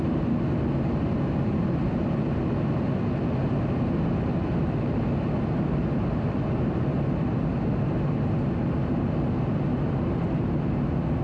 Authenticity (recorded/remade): recorded